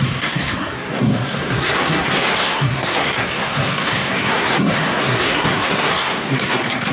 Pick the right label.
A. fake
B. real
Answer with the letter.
A